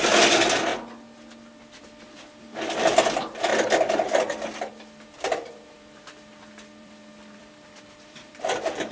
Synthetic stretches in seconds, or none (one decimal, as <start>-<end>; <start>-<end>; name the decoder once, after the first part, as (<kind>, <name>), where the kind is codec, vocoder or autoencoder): 0.0-0.7 (vocoder, BigVGAN v2); 1.8-3.5; 4.7-8.9